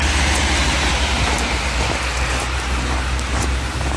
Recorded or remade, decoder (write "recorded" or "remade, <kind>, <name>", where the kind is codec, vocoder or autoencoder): recorded